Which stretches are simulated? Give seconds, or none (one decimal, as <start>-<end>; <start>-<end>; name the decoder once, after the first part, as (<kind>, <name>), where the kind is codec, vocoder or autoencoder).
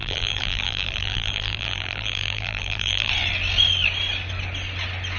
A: 0.0-3.1 (vocoder, BigVGAN v2)